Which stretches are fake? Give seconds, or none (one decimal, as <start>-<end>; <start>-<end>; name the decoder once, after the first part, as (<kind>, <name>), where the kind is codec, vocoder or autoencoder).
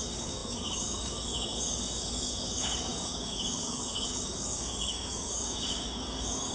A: 0.0-6.5 (codec, DAC)